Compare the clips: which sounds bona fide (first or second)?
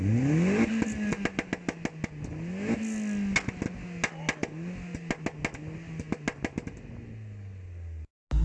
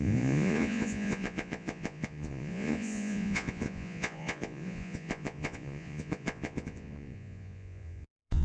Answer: first